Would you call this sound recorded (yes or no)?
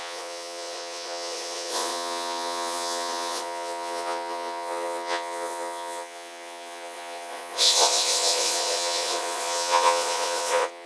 no